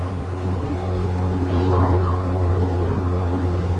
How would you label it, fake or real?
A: fake